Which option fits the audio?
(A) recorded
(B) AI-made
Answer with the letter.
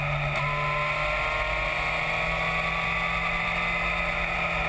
A